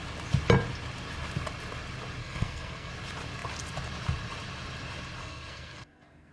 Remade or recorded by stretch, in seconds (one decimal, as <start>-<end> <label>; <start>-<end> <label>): 0.0-2.2 recorded; 2.2-2.9 remade; 2.9-5.2 recorded; 5.2-6.3 remade